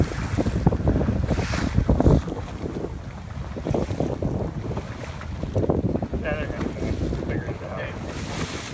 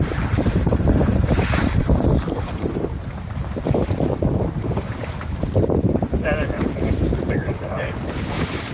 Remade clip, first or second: second